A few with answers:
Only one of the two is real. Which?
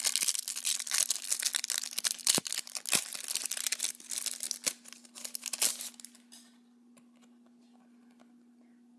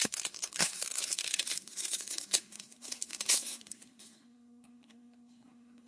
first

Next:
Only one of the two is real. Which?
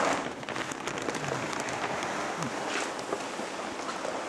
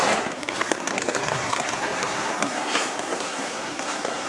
first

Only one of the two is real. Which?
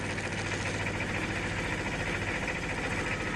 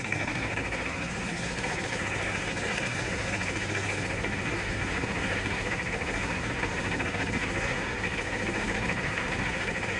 first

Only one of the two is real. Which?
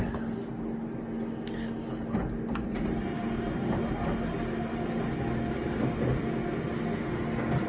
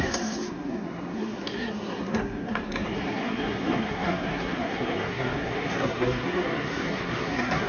first